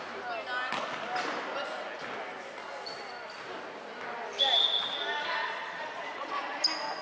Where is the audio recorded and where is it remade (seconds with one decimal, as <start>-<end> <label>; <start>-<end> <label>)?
0.0-5.4 recorded; 5.4-6.6 remade; 6.6-7.0 recorded